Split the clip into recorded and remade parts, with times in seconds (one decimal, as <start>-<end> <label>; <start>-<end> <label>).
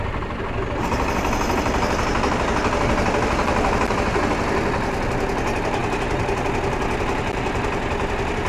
0.0-8.5 recorded